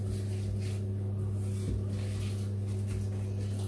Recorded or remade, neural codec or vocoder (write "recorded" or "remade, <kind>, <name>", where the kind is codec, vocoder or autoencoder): recorded